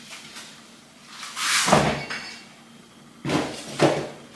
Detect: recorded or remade recorded